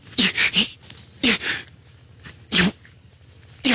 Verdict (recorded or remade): recorded